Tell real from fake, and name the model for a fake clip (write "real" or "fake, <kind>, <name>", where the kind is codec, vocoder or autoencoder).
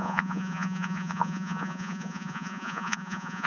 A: fake, vocoder, Vocos